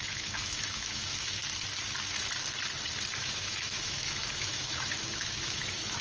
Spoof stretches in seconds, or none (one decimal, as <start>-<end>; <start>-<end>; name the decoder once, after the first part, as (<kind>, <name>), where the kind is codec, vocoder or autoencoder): 0.0-1.4 (autoencoder, DAC-VAE); 3.2-6.0